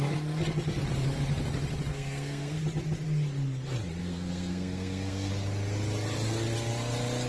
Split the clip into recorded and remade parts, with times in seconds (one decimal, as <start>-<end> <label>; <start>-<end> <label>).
0.0-1.9 recorded; 1.9-2.6 remade; 2.6-4.0 recorded; 4.0-5.3 remade; 5.3-7.3 recorded